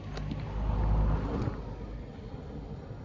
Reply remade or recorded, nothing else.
recorded